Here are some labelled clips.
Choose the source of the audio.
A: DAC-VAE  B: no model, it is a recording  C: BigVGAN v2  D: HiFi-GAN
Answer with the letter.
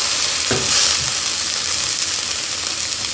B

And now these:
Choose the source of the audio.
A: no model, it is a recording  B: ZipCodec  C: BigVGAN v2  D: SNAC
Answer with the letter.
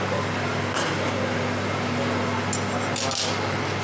A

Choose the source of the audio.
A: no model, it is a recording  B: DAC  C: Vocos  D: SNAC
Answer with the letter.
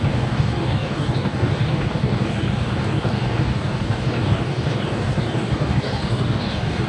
B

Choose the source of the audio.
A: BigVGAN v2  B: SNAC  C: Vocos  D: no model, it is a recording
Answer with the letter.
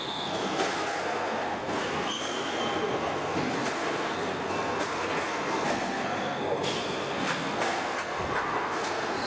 B